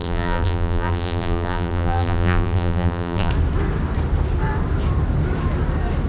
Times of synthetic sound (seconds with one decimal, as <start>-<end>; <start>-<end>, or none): 0.0-3.3